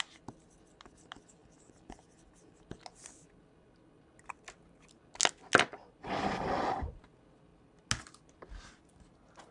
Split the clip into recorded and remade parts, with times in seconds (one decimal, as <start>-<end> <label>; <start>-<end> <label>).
0.0-9.5 recorded